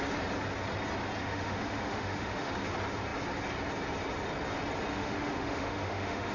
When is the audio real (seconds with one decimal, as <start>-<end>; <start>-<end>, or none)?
0.0-1.2; 2.5-4.9